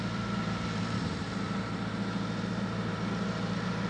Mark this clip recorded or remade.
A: remade